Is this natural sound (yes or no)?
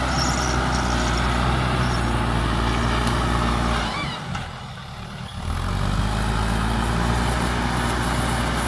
yes